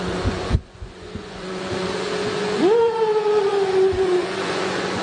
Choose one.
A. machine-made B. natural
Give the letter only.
A